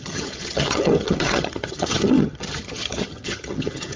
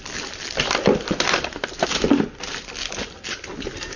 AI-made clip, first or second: first